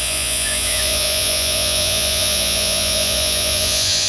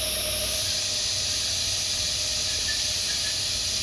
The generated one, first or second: first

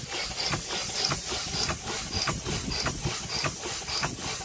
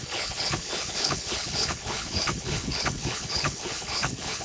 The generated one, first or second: second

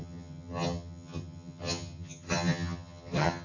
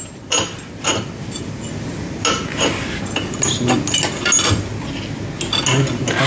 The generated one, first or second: first